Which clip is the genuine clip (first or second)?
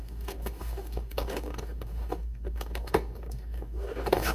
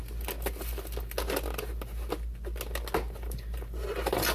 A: second